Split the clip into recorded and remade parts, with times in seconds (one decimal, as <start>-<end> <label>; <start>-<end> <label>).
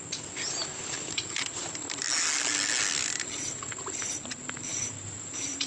0.0-4.7 recorded; 4.7-5.7 remade